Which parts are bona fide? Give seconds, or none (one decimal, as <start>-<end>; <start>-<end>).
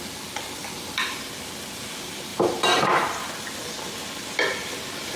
0.0-2.3; 3.3-5.2